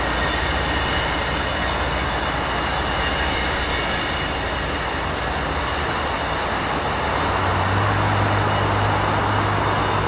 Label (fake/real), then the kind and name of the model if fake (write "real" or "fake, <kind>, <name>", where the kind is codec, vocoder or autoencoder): real